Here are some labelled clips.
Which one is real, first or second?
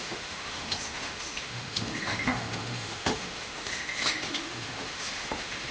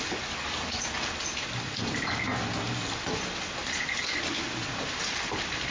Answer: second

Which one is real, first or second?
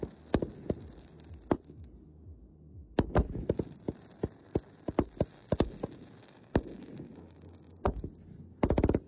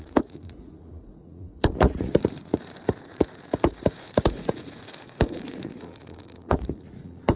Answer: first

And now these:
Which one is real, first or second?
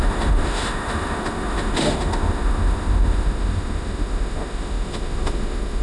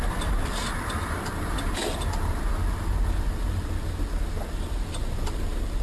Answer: second